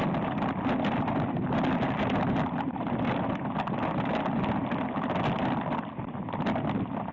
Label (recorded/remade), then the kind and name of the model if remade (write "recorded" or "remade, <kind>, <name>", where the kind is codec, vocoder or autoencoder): recorded